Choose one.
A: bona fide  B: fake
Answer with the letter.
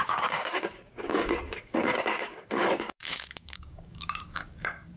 B